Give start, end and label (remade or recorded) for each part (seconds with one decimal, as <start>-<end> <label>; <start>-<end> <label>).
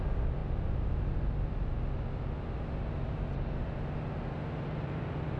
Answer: 0.0-5.4 recorded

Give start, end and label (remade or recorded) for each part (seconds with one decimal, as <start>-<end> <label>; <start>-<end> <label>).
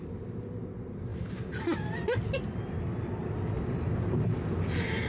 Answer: 0.0-5.1 recorded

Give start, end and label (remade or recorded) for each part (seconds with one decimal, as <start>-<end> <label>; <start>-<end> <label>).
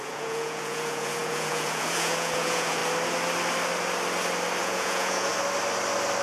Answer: 0.0-2.8 remade; 2.8-4.6 recorded; 4.6-5.3 remade; 5.3-6.2 recorded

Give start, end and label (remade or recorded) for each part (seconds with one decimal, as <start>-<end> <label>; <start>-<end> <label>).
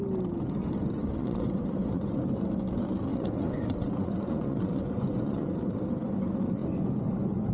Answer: 0.0-1.0 recorded; 1.0-2.2 remade; 2.2-3.1 recorded; 3.1-5.6 remade; 5.6-7.5 recorded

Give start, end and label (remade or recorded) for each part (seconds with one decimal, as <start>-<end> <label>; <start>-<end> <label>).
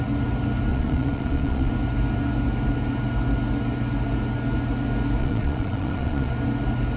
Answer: 0.0-0.7 recorded; 0.7-1.7 remade; 1.7-5.2 recorded; 5.2-6.3 remade; 6.3-7.0 recorded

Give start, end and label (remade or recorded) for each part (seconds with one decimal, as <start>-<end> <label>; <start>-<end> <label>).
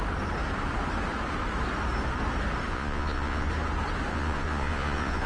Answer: 0.0-2.7 recorded; 2.7-3.5 remade; 3.5-4.1 recorded; 4.1-5.3 remade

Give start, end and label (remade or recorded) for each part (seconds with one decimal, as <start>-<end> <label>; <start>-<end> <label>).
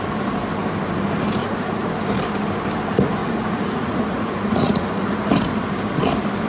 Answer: 0.0-1.4 recorded; 1.4-1.9 remade; 1.9-3.2 recorded; 3.2-5.1 remade; 5.1-6.5 recorded